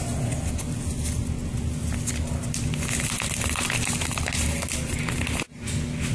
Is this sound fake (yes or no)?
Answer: no